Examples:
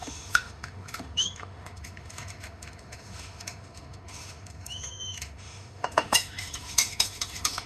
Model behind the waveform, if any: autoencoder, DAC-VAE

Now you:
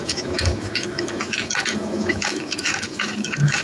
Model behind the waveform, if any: autoencoder, DAC-VAE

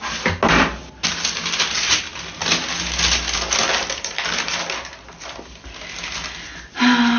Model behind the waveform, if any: none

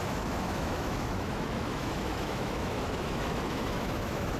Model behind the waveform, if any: autoencoder, DAC-VAE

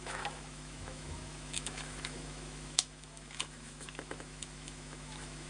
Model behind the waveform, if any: autoencoder, DAC-VAE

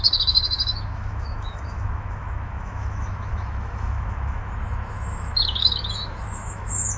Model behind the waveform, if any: autoencoder, DAC-VAE